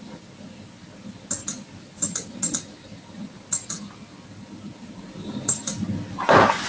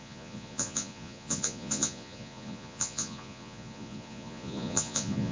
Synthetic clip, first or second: second